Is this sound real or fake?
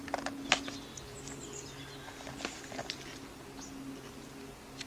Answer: real